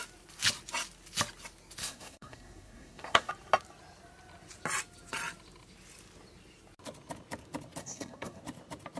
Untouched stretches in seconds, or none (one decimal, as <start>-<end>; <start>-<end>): 0.0-1.8; 3.3-7.8; 8.4-9.0